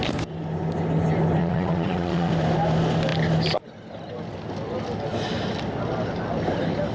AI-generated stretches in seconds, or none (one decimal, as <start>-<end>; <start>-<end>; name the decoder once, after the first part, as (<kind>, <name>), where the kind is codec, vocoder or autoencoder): 1.4-2.3 (vocoder, Vocos)